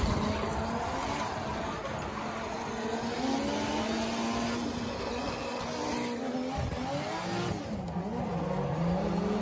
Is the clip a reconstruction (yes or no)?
no